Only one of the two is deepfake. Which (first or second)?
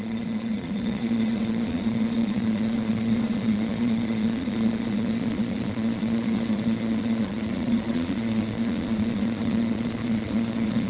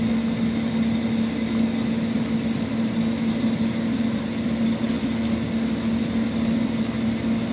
first